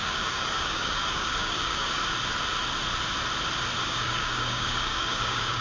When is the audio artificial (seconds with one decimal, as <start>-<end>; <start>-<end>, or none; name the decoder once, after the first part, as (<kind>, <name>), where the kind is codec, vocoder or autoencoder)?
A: 0.0-2.0 (codec, DAC); 3.8-5.6